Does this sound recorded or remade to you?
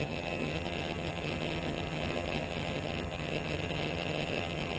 remade